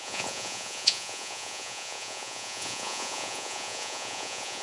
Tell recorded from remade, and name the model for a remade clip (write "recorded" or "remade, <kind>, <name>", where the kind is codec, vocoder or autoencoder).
remade, vocoder, Vocos